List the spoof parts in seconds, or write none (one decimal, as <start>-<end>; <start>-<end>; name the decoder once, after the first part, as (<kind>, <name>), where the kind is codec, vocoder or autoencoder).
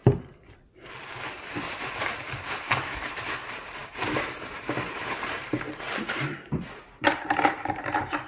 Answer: 1.1-8.3 (vocoder, BigVGAN v2)